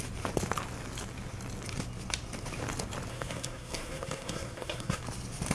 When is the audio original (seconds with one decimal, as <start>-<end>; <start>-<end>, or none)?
0.0-3.1; 5.0-5.5

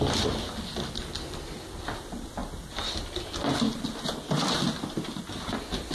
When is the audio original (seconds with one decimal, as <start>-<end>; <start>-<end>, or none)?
0.0-5.9

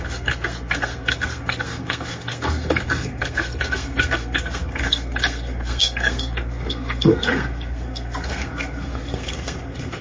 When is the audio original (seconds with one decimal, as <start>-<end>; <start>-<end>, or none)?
none

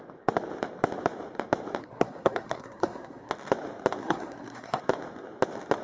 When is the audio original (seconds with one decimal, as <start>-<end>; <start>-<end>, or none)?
0.0-1.8; 3.3-4.0; 4.8-5.8

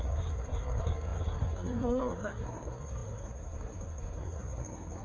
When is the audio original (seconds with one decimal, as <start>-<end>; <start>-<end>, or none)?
none

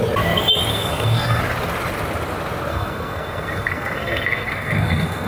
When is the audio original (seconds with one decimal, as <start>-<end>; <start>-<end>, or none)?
0.0-0.7; 1.4-2.7

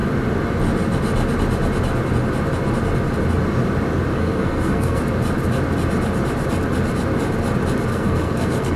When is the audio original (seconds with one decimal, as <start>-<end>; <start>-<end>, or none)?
0.0-4.1; 5.0-7.9